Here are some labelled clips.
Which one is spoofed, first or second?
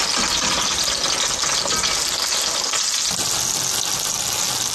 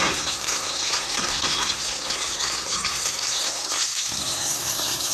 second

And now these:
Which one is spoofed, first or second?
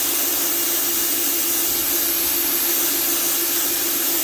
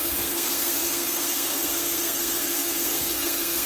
second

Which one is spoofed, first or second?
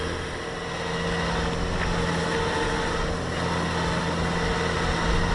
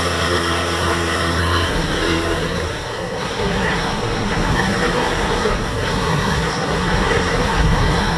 second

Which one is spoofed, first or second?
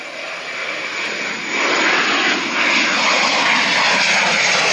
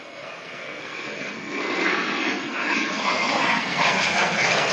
second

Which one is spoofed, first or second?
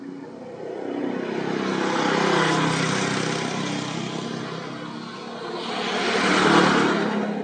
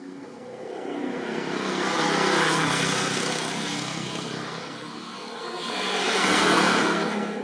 second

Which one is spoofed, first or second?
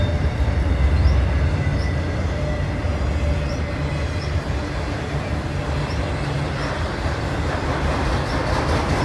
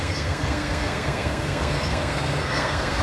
second